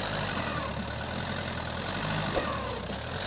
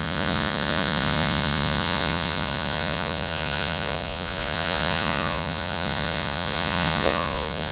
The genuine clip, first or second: first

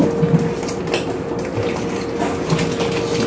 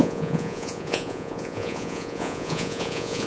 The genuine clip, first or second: first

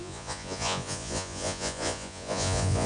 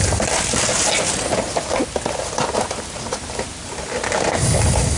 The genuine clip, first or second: second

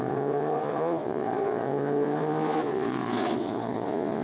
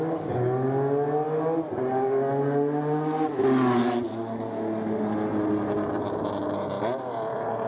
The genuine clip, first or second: second